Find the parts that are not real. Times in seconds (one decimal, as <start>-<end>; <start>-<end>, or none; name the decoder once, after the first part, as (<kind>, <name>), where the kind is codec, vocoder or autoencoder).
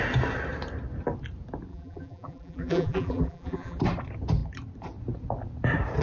1.7-3.8 (vocoder, BigVGAN v2)